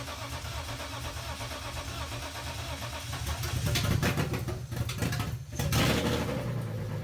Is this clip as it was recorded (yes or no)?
yes